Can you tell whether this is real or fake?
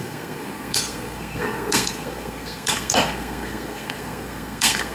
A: fake